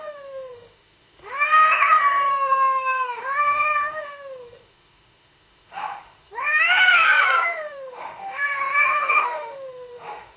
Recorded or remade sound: remade